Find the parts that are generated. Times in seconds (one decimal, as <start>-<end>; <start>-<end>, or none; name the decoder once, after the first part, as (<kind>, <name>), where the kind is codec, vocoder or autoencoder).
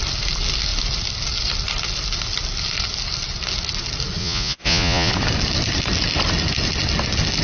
4.2-5.1 (vocoder, Vocos)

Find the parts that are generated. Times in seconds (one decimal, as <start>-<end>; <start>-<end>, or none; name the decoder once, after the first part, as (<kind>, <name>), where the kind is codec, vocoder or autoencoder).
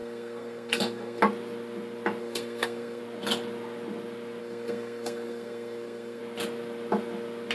0.0-1.2 (codec, SNAC); 2.2-3.0; 4.4-6.2